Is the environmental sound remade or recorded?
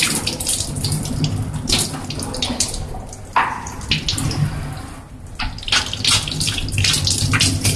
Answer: recorded